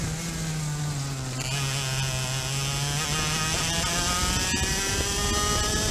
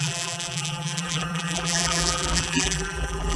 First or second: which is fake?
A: second